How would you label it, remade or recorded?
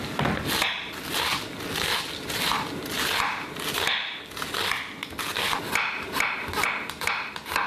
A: recorded